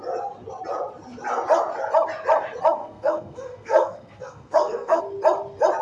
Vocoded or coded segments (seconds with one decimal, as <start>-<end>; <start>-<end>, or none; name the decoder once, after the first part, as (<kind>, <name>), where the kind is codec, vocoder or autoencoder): 2.8-5.0 (codec, SNAC)